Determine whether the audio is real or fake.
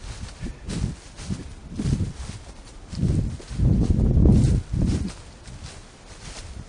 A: real